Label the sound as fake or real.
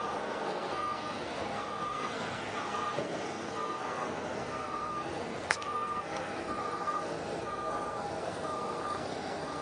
fake